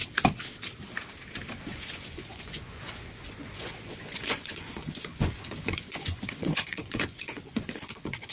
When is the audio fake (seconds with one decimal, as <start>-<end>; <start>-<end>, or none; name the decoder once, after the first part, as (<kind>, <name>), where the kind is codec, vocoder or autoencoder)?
1.7-8.3 (vocoder, Vocos)